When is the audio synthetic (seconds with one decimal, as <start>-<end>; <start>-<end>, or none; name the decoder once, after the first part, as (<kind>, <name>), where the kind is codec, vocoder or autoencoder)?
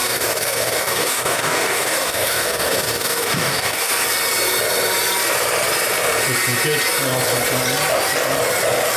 0.0-3.9 (codec, DAC)